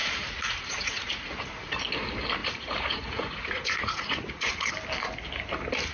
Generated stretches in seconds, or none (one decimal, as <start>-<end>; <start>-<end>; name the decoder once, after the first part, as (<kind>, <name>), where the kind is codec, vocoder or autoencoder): 0.0-1.8 (vocoder, Vocos); 2.4-4.7

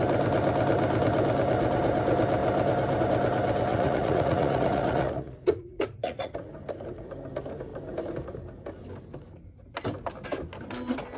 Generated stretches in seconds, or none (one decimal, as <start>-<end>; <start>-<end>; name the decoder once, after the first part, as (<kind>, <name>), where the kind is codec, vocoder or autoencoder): 3.7-6.5 (vocoder, Vocos)

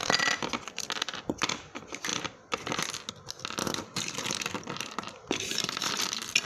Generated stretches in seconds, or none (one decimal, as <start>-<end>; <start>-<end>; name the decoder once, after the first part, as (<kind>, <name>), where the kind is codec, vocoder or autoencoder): 3.6-6.0 (vocoder, BigVGAN v2)